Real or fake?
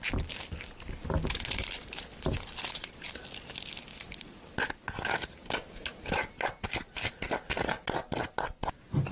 real